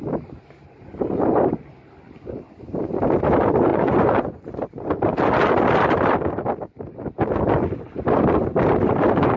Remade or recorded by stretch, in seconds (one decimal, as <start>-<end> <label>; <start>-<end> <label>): 0.0-3.7 recorded; 3.7-4.4 remade; 4.4-9.4 recorded